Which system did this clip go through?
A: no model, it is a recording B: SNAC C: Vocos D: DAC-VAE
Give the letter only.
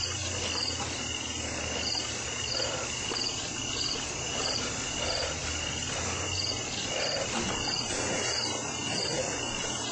A